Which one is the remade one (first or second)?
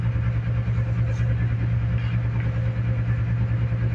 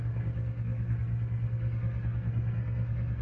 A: second